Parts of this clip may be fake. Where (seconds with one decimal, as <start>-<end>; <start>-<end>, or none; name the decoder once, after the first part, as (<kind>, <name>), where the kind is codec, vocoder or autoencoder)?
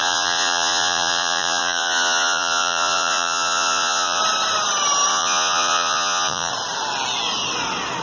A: 0.0-4.2 (vocoder, Vocos); 5.1-6.5